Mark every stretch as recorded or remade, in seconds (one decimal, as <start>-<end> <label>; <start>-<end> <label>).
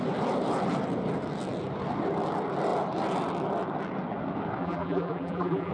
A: 0.0-4.6 recorded; 4.6-5.7 remade